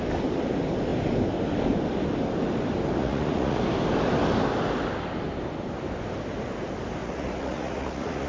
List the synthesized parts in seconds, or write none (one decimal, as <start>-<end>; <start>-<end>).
3.0-3.6; 7.0-8.3